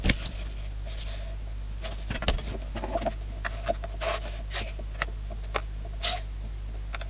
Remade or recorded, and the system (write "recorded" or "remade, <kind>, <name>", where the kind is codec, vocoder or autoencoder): recorded